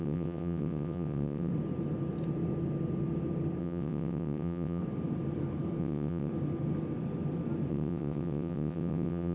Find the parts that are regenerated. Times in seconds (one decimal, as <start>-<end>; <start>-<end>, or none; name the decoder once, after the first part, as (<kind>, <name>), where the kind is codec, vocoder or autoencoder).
0.0-1.5 (vocoder, WaveNeXt); 3.6-4.8; 5.8-6.3; 7.7-9.3

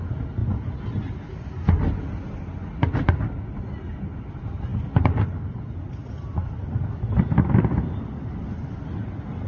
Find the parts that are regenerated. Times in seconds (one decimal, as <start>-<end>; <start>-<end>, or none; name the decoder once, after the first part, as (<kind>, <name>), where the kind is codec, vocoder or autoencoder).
none

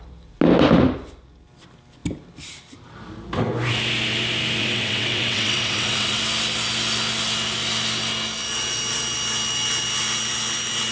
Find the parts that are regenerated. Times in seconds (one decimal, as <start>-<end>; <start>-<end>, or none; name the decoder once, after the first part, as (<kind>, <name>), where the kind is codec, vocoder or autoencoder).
4.6-6.2 (vocoder, WaveNeXt)

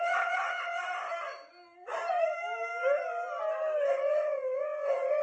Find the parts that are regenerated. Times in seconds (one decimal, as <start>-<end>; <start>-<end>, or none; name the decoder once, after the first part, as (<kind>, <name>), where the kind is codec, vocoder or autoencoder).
0.0-0.8 (vocoder, WaveNeXt); 3.9-5.2